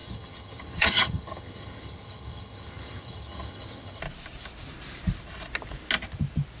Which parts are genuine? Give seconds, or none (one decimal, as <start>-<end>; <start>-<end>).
4.0-6.6